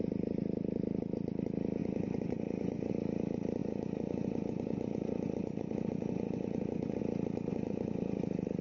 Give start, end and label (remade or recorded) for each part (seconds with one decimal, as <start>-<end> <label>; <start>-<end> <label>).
0.0-1.8 recorded; 1.8-2.9 remade; 2.9-3.6 recorded; 3.6-7.0 remade; 7.0-7.5 recorded; 7.5-8.2 remade; 8.2-8.6 recorded